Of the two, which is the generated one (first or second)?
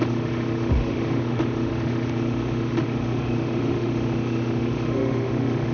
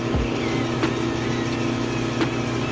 first